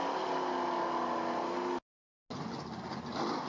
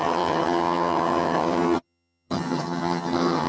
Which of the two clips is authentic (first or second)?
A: first